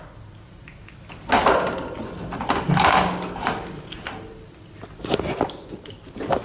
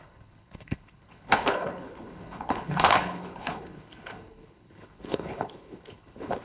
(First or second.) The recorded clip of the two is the first